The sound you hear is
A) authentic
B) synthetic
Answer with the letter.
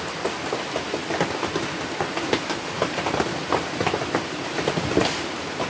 A